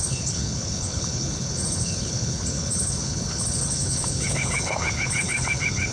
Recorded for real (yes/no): no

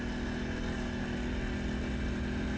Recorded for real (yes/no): yes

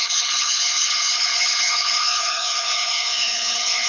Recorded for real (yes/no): no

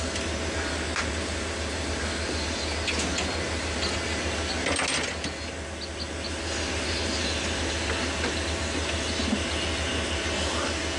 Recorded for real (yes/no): yes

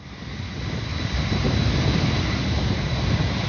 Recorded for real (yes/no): yes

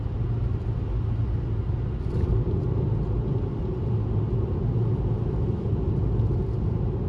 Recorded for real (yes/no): yes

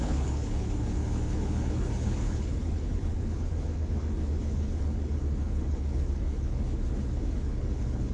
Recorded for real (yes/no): no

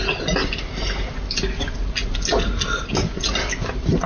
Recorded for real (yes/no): yes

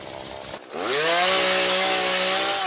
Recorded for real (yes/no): yes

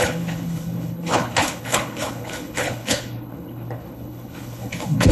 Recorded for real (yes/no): no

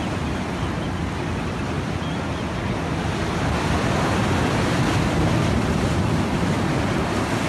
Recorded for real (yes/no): yes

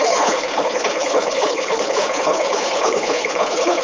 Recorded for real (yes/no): no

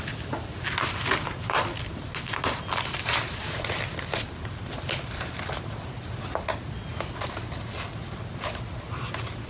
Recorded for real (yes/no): yes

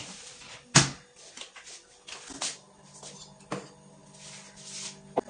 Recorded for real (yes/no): yes